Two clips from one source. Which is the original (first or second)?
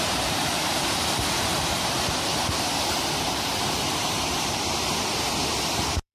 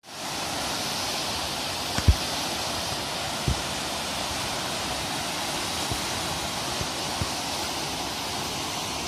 second